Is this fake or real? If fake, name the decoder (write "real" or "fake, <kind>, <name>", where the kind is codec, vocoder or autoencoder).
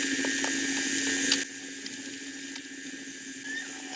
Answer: real